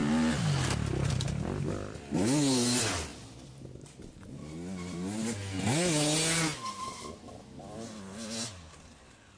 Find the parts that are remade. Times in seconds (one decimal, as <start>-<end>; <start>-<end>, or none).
none